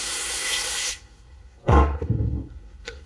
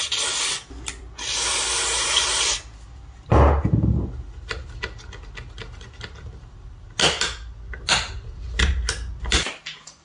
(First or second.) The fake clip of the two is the first